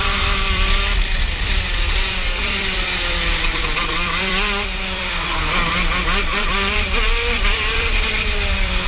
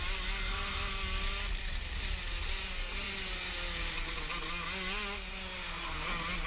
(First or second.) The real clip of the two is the second